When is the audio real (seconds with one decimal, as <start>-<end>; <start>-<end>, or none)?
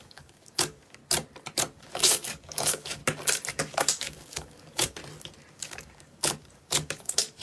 1.0-1.8; 3.0-3.5; 5.0-5.5